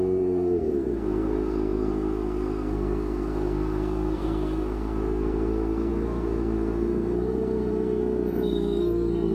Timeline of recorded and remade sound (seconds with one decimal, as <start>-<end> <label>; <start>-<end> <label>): 0.0-9.3 remade